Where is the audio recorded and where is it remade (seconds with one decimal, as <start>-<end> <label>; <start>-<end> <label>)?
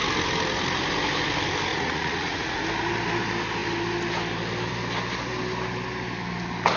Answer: 0.0-1.7 recorded; 1.7-2.6 remade; 2.6-6.8 recorded